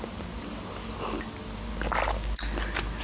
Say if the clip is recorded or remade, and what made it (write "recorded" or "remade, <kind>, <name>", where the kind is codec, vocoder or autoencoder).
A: recorded